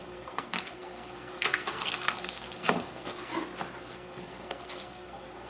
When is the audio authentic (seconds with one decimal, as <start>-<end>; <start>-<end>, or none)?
3.3-3.8